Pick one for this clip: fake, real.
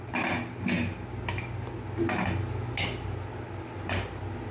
real